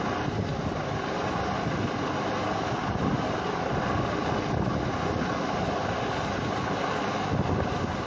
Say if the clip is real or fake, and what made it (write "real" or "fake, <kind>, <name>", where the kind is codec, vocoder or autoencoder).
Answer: real